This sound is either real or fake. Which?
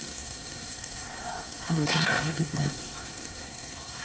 fake